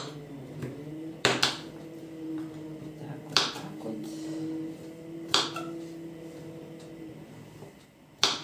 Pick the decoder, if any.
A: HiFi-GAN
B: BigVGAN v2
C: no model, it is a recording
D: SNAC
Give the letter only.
B